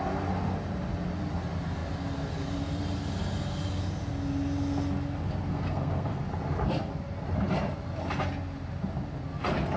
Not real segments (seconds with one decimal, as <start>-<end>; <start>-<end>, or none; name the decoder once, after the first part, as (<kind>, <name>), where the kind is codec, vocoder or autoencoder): 5.5-6.2 (codec, SNAC)